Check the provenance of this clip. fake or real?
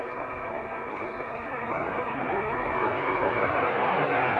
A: fake